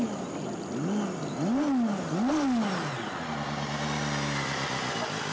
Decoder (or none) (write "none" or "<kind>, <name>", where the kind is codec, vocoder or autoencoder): none